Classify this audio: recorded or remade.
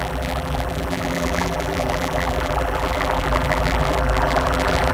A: remade